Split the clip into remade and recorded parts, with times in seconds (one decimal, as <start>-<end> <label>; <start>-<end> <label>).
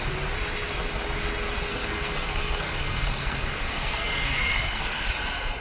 0.0-1.7 recorded; 1.7-5.1 remade; 5.1-5.6 recorded